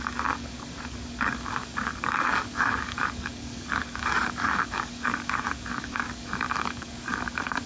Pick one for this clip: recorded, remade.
remade